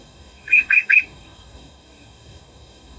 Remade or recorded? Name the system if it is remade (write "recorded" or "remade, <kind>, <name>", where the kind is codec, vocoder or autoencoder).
remade, codec, DAC